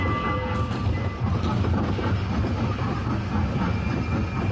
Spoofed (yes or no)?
no